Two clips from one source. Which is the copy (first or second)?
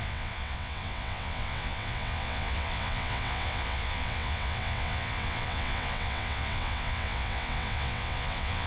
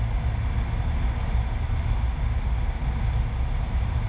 first